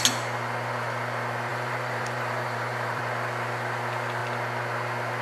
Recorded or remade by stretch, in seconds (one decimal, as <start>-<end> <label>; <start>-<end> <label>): 0.0-1.5 recorded; 1.5-3.0 remade; 3.0-5.2 recorded